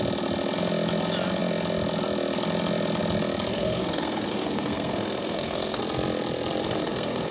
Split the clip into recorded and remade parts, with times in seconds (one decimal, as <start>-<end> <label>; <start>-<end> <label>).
0.0-3.5 recorded; 3.5-5.8 remade; 5.8-6.6 recorded; 6.6-7.3 remade